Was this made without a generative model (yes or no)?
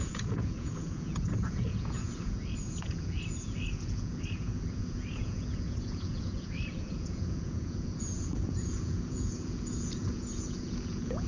no